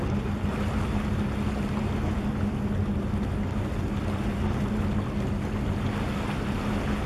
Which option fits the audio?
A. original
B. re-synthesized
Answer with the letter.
A